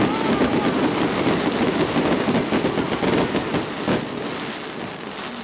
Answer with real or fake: real